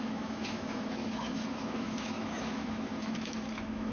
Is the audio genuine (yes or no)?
no